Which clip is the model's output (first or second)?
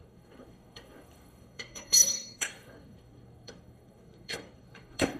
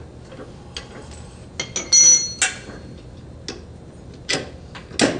first